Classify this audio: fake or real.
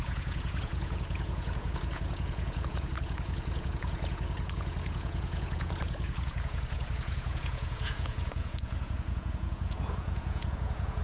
fake